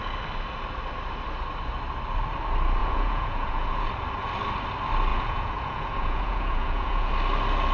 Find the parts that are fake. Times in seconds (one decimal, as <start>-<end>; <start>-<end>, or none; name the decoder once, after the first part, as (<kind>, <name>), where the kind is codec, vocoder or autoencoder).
2.8-3.9 (vocoder, Vocos); 5.1-7.1